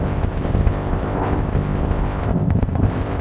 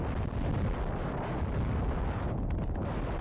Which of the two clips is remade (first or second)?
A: first